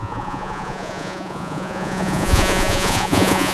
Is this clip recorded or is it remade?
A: remade